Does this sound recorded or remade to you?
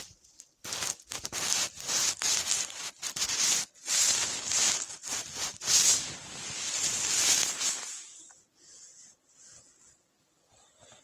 recorded